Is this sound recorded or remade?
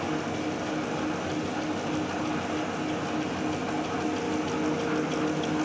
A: recorded